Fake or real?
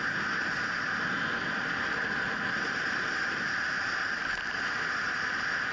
real